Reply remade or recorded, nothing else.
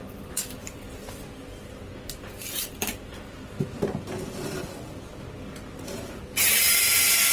recorded